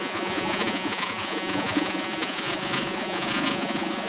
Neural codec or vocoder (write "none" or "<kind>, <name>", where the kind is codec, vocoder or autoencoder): vocoder, Vocos